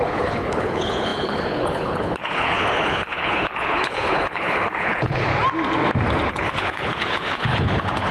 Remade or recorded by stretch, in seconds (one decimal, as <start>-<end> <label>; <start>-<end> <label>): 0.0-5.3 remade; 5.3-6.3 recorded; 6.3-8.1 remade